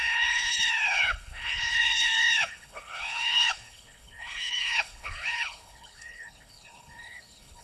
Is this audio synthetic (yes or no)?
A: yes